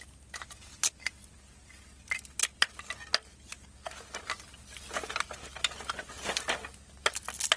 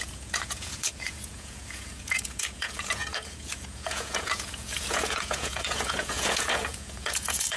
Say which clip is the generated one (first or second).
second